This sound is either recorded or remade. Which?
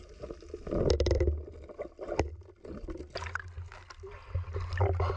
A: recorded